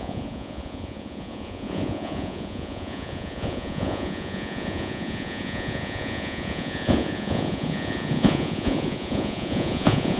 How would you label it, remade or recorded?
remade